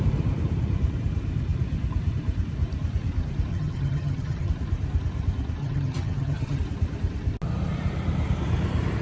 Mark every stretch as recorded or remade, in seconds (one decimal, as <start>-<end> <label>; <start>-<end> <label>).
0.0-3.5 recorded; 3.5-4.5 remade; 4.5-5.6 recorded; 5.6-6.6 remade; 6.6-9.0 recorded